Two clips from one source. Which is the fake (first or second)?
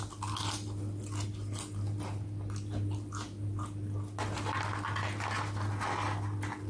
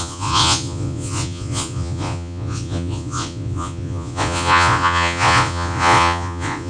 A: second